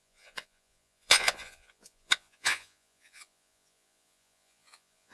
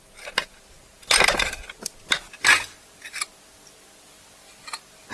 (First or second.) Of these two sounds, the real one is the second